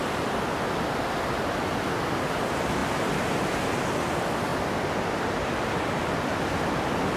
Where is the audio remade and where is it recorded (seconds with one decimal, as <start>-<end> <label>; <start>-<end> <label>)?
0.0-7.2 recorded